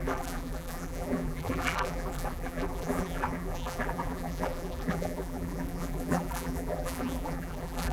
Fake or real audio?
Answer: fake